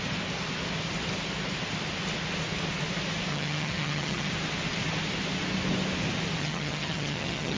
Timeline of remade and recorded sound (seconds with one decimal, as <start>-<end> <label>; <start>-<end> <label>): 0.0-3.3 recorded; 3.3-4.3 remade; 4.3-6.4 recorded; 6.4-7.6 remade